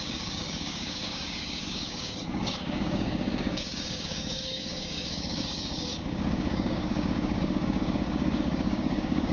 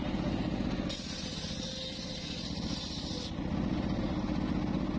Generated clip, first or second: first